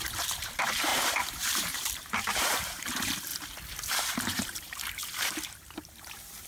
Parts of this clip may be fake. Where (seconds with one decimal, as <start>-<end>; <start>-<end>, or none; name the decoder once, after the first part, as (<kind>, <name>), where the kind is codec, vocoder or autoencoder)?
0.0-3.3 (vocoder, BigVGAN v2); 3.9-5.0; 5.5-6.5